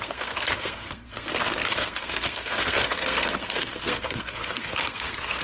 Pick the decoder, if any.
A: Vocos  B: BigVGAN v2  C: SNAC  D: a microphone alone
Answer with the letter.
C